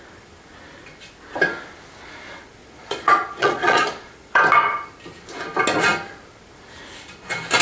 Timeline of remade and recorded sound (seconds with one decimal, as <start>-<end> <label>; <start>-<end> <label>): 0.0-2.6 recorded; 2.6-4.4 remade; 4.4-7.6 recorded